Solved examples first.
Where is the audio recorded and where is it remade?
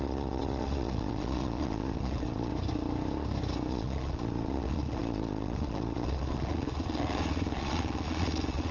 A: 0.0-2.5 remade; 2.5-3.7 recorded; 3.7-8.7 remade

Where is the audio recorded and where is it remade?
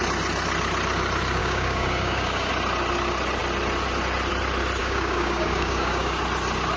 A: 0.0-1.4 recorded; 1.4-2.5 remade; 2.5-4.8 recorded; 4.8-6.2 remade; 6.2-6.8 recorded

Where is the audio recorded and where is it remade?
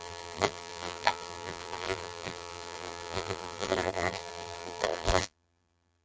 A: 0.0-6.0 remade